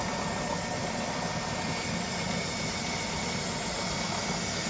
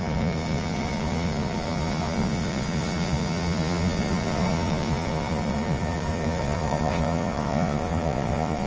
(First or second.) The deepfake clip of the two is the second